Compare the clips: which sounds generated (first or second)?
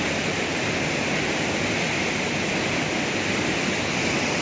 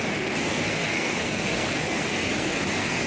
second